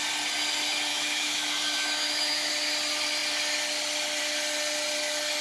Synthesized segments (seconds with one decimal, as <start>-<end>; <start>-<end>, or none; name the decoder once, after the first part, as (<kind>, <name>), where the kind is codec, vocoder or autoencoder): 0.9-2.5 (autoencoder, DAC-VAE)